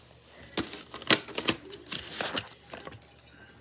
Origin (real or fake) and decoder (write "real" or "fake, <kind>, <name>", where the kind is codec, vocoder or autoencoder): real